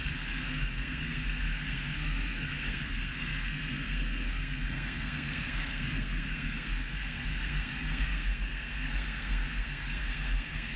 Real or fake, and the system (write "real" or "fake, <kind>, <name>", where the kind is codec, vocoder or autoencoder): fake, codec, SNAC